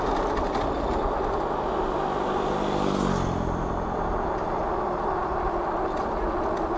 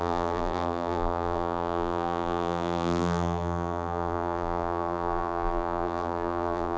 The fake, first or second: second